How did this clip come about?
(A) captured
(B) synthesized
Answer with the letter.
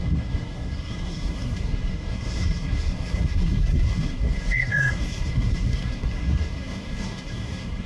B